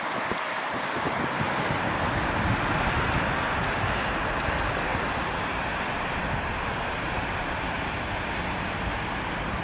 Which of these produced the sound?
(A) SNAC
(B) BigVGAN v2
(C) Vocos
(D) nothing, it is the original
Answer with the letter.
D